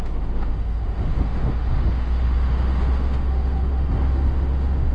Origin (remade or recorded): remade